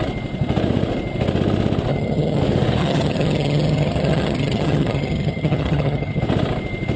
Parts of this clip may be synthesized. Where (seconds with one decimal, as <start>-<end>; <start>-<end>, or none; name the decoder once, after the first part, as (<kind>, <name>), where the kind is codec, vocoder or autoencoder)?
1.9-2.4 (vocoder, HiFi-GAN); 2.8-6.2